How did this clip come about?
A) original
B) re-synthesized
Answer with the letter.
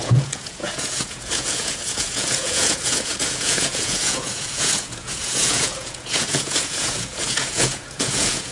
B